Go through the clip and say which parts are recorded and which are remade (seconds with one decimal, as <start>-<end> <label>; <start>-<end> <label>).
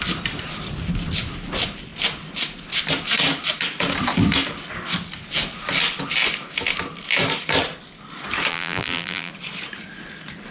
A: 0.0-8.5 recorded; 8.5-9.3 remade; 9.3-10.5 recorded